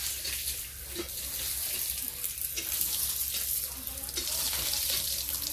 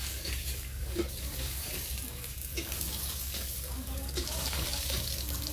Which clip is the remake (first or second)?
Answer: second